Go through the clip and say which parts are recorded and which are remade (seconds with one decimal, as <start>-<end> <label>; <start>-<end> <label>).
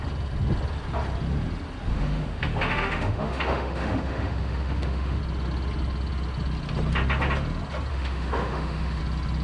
0.0-1.9 recorded; 1.9-5.2 remade; 5.2-7.9 recorded; 7.9-9.0 remade; 9.0-9.4 recorded